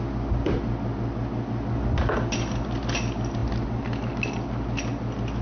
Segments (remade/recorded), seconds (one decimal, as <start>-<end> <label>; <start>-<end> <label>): 0.0-5.4 recorded